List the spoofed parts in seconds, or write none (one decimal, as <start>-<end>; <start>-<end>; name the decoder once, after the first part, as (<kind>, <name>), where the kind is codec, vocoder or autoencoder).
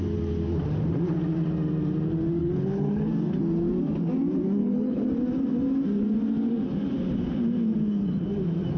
2.4-3.1 (codec, HILCodec); 4.6-5.1